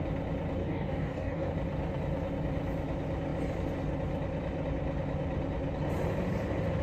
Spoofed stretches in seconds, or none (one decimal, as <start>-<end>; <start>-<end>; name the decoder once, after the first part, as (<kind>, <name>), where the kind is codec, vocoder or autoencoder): 0.6-1.5 (codec, DAC)